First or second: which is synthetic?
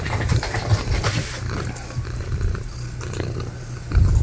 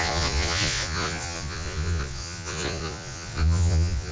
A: second